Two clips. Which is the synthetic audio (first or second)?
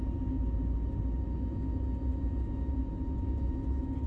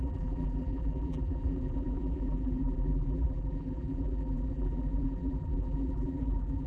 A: second